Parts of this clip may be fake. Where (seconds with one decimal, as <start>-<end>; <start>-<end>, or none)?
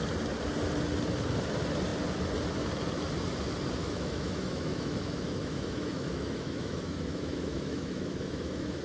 3.8-8.8